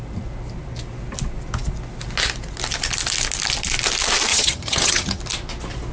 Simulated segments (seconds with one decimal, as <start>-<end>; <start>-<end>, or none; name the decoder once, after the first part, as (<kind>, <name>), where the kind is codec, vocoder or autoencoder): 4.3-5.2 (vocoder, HiFi-GAN)